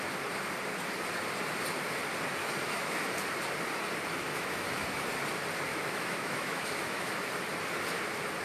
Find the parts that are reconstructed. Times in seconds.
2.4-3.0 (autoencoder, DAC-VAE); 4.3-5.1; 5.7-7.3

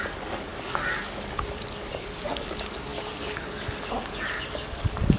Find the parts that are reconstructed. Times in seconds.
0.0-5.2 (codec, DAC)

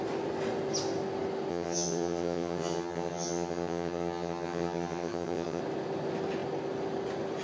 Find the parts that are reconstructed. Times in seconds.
1.5-5.6 (vocoder, HiFi-GAN)